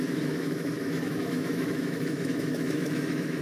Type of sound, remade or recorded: remade